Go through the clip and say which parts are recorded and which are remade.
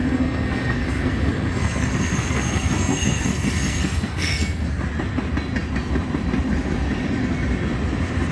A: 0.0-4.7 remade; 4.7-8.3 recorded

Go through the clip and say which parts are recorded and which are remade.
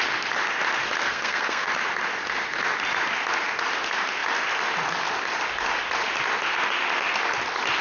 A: 0.0-1.0 recorded; 1.0-1.7 remade; 1.7-7.8 recorded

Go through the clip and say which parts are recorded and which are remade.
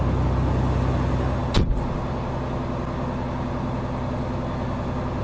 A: 0.0-5.2 recorded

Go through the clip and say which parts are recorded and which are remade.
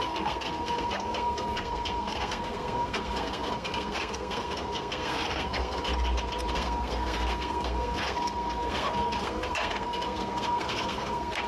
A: 0.0-5.9 remade; 5.9-6.5 recorded; 6.5-11.5 remade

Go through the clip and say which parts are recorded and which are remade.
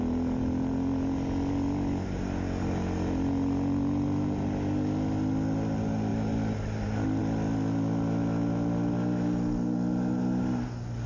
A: 0.0-11.1 recorded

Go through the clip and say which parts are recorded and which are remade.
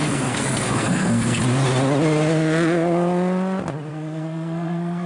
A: 0.0-1.4 remade; 1.4-3.9 recorded; 3.9-5.1 remade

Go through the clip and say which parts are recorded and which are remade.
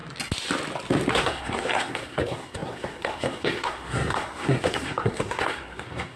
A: 0.0-1.1 recorded; 1.1-6.2 remade